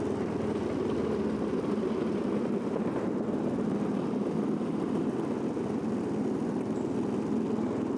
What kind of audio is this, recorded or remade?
recorded